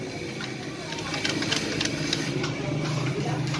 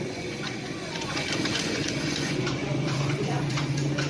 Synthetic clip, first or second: second